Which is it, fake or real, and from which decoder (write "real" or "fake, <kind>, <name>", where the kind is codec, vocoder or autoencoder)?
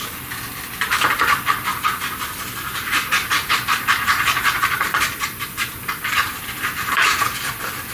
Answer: fake, vocoder, BigVGAN v2